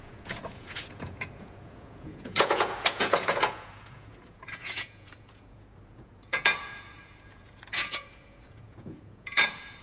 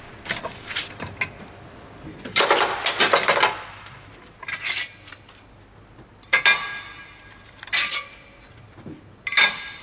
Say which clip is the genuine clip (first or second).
second